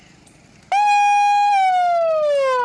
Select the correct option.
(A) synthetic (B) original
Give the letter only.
B